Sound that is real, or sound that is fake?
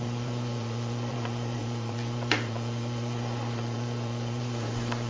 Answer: fake